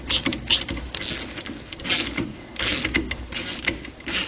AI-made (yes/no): no